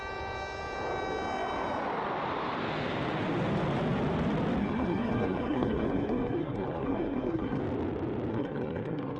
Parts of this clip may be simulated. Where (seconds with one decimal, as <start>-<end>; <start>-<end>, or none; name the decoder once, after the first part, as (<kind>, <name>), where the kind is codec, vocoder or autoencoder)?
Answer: 4.6-7.6 (codec, SNAC); 8.3-9.2